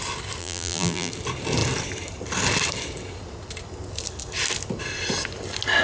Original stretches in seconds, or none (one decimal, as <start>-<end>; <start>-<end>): 0.0-0.4; 1.1-5.8